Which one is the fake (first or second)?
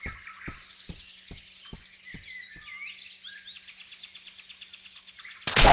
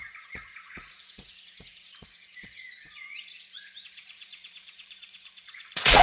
second